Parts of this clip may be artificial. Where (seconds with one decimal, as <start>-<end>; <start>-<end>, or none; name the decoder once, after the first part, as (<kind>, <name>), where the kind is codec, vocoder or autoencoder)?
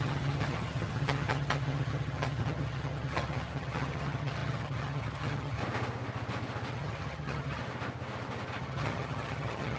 0.0-5.6 (vocoder, HiFi-GAN); 6.7-7.6; 8.6-9.8